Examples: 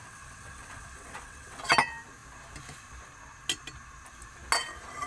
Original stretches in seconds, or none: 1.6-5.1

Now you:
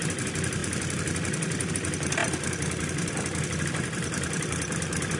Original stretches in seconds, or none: 0.6-1.7